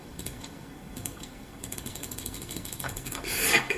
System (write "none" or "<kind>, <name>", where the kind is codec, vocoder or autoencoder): codec, SNAC